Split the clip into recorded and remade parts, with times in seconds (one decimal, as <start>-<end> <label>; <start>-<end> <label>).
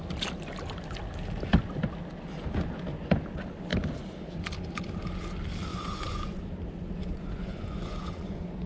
0.0-5.7 recorded; 5.7-6.4 remade; 6.4-7.0 recorded; 7.0-8.7 remade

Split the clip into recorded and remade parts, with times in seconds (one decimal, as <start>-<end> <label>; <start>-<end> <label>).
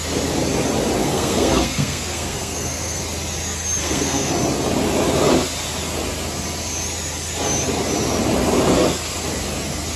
0.0-1.0 recorded; 1.0-3.0 remade; 3.0-3.8 recorded; 3.8-4.3 remade; 4.3-10.0 recorded